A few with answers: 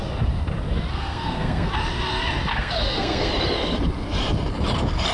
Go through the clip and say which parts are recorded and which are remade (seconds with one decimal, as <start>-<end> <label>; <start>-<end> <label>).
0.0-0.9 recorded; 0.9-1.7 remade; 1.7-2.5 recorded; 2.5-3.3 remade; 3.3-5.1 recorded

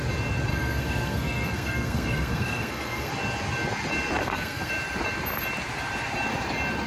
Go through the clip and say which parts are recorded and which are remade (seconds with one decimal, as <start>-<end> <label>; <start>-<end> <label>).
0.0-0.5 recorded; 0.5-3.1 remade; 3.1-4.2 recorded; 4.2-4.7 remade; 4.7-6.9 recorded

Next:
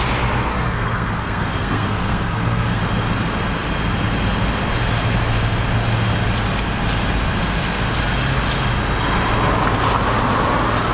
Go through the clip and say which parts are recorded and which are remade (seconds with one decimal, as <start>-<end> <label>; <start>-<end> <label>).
0.0-0.5 recorded; 0.5-2.8 remade; 2.8-10.9 recorded

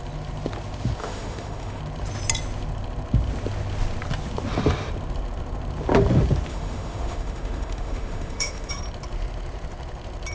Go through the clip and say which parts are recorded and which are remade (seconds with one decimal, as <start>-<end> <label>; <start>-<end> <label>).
0.0-1.0 recorded; 1.0-1.8 remade; 1.8-6.5 recorded; 6.5-8.7 remade; 8.7-10.3 recorded

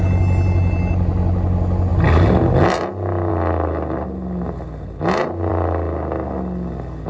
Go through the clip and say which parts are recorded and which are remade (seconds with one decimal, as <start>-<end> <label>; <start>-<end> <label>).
0.0-7.1 recorded

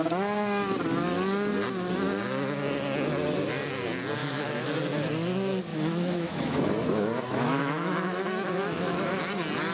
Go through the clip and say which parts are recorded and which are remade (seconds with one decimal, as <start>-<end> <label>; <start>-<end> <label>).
0.0-4.2 recorded; 4.2-4.7 remade; 4.7-5.7 recorded; 5.7-9.0 remade; 9.0-9.7 recorded